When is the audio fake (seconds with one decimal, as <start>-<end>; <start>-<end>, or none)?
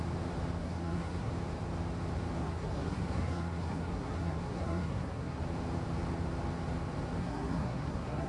0.6-1.3; 2.4-5.4; 7.2-8.3